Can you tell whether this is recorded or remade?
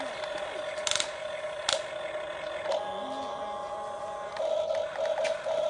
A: recorded